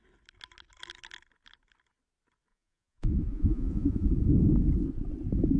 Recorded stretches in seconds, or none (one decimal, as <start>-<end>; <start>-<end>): 0.0-2.5; 4.1-5.6